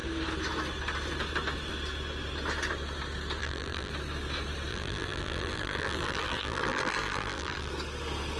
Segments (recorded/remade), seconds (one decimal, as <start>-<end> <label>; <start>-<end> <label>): 0.0-3.4 recorded; 3.4-3.9 remade; 3.9-4.7 recorded; 4.7-7.7 remade; 7.7-8.4 recorded